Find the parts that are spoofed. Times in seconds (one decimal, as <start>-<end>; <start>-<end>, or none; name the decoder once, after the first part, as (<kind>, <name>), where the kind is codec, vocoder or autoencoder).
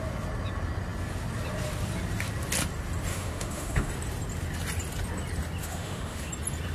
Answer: 3.1-3.9 (autoencoder, DAC-VAE); 5.6-6.3